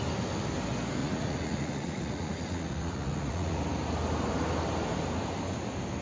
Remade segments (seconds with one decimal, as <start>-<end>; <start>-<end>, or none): 1.0-3.6